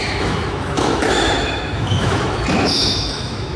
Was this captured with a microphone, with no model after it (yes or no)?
no